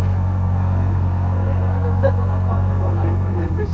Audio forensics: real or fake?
fake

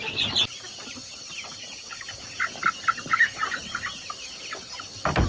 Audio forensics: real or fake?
real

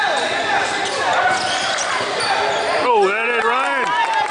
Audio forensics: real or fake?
real